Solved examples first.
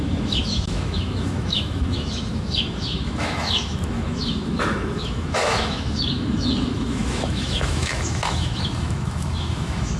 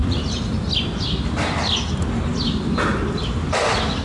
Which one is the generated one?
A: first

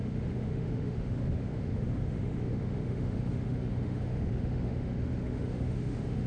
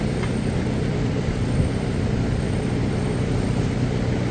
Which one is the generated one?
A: first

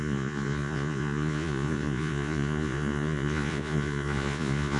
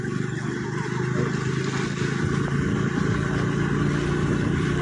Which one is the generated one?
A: first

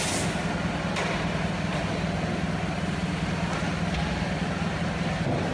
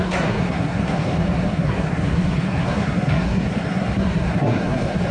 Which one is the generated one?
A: second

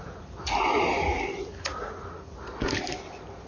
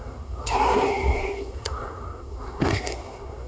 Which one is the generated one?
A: second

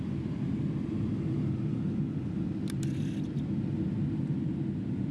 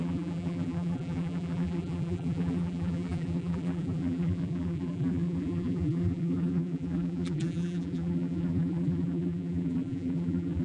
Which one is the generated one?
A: second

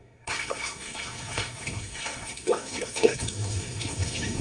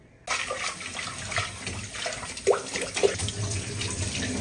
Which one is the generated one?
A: first